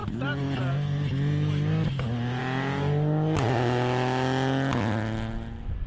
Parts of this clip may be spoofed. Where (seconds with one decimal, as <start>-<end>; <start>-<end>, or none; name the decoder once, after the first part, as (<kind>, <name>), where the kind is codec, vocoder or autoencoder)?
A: none